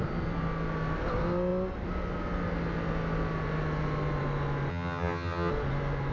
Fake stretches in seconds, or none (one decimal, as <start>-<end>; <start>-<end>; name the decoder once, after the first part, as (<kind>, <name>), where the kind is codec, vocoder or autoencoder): 4.7-5.5 (vocoder, HiFi-GAN)